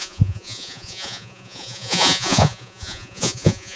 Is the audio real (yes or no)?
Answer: no